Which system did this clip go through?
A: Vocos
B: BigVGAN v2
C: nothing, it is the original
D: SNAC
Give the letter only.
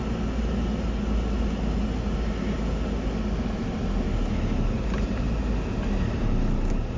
C